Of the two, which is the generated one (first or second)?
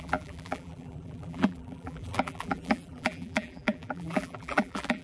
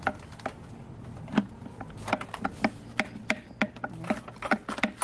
first